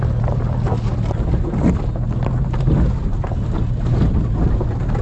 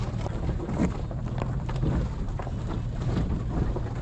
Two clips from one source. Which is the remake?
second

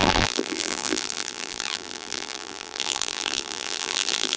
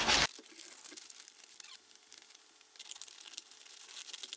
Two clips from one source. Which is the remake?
first